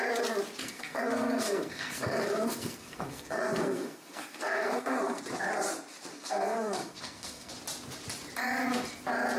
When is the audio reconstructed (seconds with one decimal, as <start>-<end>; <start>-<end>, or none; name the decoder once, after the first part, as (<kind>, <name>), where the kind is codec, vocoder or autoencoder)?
0.6-5.2 (codec, SNAC); 6.1-7.5